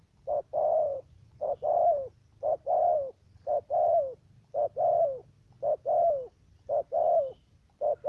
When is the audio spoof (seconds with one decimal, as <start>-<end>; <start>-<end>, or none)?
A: 0.9-1.6